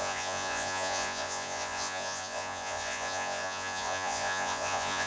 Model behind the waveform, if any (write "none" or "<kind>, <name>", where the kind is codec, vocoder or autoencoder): vocoder, Vocos